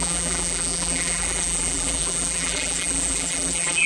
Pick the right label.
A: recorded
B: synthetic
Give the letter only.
B